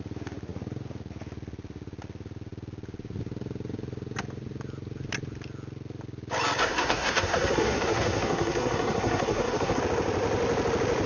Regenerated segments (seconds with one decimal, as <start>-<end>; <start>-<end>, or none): 6.6-9.8